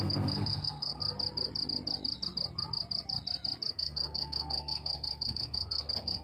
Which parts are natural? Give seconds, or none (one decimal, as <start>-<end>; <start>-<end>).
1.0-3.7